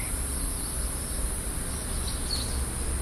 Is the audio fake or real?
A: real